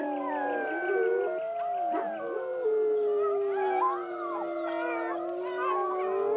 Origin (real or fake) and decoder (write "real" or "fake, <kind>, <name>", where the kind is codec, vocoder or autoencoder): real